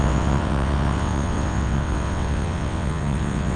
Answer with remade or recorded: remade